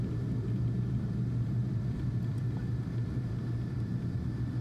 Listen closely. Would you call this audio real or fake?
fake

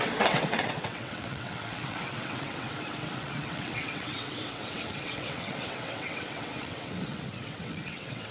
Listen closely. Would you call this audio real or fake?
fake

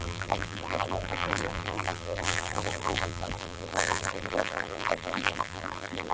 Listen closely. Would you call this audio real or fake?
fake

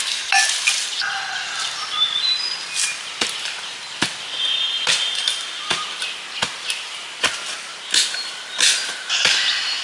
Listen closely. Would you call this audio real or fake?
real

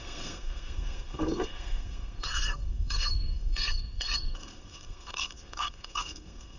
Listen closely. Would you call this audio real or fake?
fake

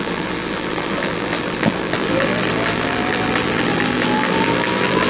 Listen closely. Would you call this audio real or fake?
fake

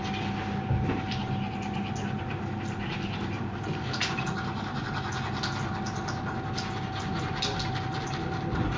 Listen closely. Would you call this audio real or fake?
real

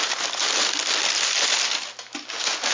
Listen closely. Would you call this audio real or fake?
real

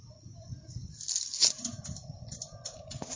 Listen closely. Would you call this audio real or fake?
real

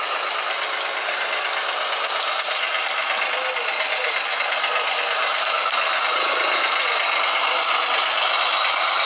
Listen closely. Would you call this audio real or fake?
real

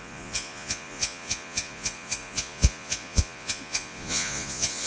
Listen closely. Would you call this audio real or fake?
fake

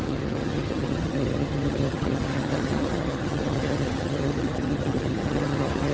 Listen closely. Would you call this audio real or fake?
fake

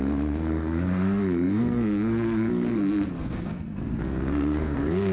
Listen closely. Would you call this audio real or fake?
fake